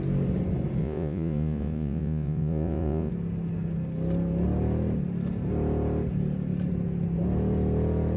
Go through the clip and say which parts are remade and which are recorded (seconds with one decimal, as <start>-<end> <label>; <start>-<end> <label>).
0.0-0.8 recorded; 0.8-3.1 remade; 3.1-8.2 recorded